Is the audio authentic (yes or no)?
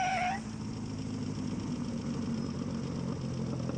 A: yes